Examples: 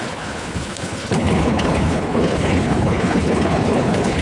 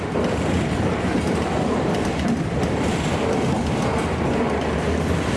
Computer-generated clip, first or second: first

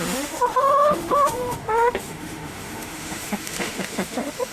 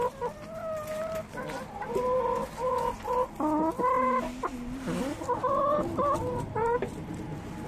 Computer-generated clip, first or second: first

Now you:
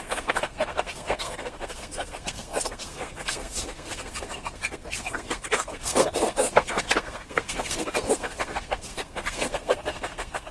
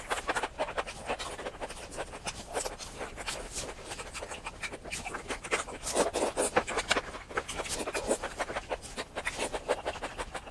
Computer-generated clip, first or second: first